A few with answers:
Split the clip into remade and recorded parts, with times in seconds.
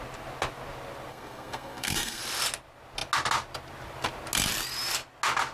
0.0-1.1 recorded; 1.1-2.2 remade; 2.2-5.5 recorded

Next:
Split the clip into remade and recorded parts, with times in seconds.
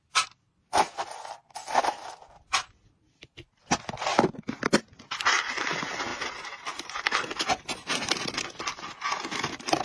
0.0-6.1 recorded; 6.1-8.6 remade; 8.6-9.8 recorded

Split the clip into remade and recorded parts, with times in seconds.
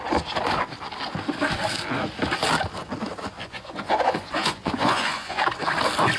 0.0-3.4 recorded; 3.4-5.4 remade; 5.4-6.2 recorded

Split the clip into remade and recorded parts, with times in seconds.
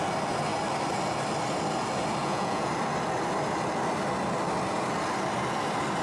0.0-2.2 recorded; 2.2-2.7 remade; 2.7-6.0 recorded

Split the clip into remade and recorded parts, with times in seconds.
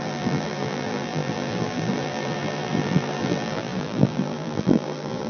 0.0-5.3 remade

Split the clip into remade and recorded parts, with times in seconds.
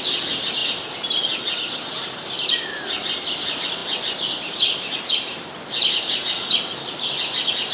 0.0-7.7 recorded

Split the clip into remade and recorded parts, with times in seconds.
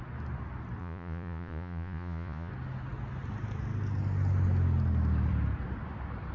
0.0-0.8 recorded; 0.8-2.5 remade; 2.5-6.3 recorded